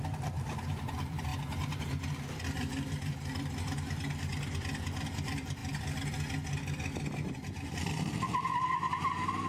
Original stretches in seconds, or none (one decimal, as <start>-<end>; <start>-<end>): 5.6-7.3